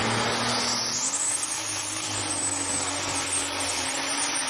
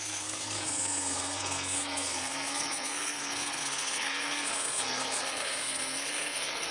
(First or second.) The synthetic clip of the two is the second